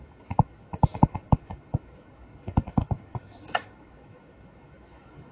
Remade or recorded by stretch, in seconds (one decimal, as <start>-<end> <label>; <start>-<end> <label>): 0.0-5.3 remade